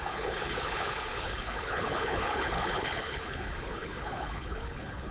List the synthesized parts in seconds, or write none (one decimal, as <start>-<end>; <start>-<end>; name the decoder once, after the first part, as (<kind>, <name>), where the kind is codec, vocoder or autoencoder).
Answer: 0.0-5.1 (codec, HILCodec)

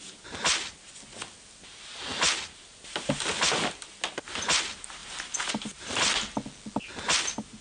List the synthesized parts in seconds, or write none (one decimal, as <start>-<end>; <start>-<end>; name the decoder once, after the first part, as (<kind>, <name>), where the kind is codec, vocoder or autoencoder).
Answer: none

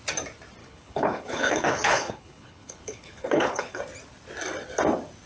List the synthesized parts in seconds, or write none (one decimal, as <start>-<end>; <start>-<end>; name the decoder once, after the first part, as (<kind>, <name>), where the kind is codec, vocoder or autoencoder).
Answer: 0.6-3.8 (codec, HILCodec)

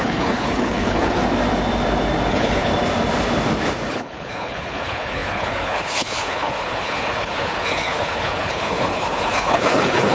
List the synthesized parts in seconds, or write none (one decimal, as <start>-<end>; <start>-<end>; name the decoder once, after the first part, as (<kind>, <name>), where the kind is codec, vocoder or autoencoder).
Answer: 0.0-1.2 (codec, HILCodec); 2.3-2.7; 3.9-10.1

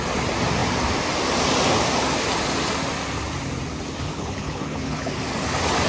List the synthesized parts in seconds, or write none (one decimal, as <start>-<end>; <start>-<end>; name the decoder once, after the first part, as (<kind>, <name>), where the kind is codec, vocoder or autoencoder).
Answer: 4.1-5.1 (codec, HILCodec)